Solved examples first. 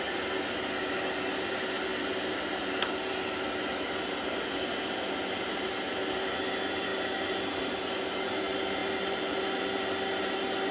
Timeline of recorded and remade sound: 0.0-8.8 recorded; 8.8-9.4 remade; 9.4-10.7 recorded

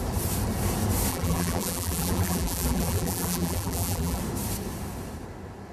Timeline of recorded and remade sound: 0.0-1.1 recorded; 1.1-4.2 remade; 4.2-5.7 recorded

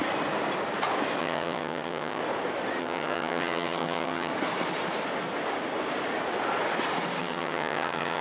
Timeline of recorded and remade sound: 0.0-1.2 recorded; 1.2-2.2 remade; 2.2-2.8 recorded; 2.8-4.3 remade; 4.3-7.2 recorded; 7.2-8.2 remade